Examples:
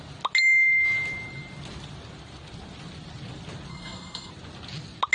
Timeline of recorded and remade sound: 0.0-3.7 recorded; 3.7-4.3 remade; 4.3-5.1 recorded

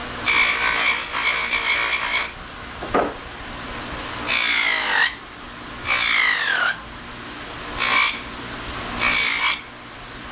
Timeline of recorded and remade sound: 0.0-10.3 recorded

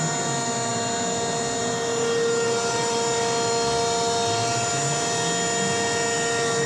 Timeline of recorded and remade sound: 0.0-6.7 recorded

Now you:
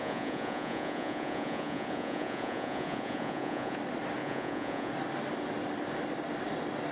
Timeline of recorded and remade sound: 0.0-3.8 remade; 3.8-4.2 recorded; 4.2-4.9 remade; 4.9-6.9 recorded